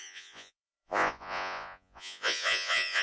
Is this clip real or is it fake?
fake